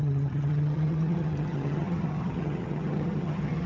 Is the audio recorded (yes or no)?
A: no